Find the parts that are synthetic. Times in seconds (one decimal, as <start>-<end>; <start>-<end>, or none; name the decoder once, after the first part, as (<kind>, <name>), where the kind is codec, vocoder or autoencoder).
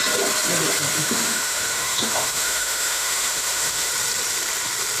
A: 0.9-3.9 (autoencoder, DAC-VAE)